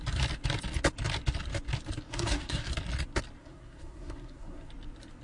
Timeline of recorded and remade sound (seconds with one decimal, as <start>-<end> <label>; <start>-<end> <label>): 0.0-2.1 recorded; 2.1-2.7 remade; 2.7-3.4 recorded; 3.4-4.7 remade; 4.7-5.2 recorded